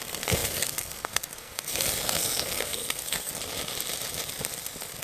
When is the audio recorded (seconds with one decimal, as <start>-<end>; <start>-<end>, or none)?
3.3-5.0